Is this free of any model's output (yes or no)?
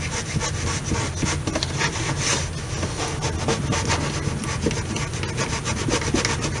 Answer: yes